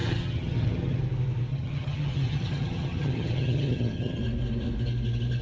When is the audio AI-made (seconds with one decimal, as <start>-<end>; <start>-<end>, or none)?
0.0-1.0; 1.5-4.2